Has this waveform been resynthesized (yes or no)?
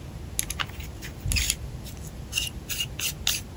no